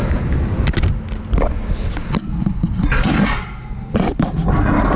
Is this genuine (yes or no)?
yes